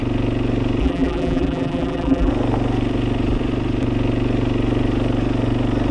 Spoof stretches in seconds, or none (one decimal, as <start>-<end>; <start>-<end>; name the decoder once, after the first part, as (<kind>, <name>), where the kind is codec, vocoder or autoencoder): 0.8-2.3 (vocoder, BigVGAN v2)